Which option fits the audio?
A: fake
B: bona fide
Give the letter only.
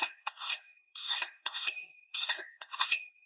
A